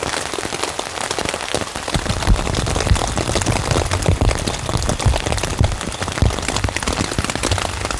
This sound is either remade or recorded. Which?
recorded